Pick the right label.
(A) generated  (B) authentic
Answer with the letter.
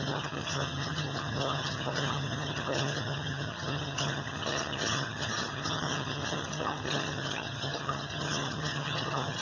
A